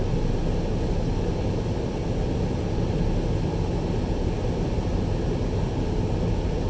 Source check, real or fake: real